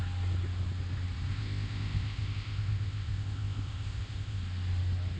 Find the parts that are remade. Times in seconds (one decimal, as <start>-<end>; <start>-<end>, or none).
1.3-4.4